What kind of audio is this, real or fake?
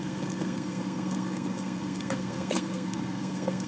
fake